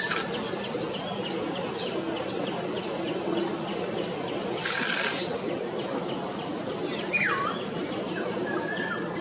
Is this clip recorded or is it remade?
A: recorded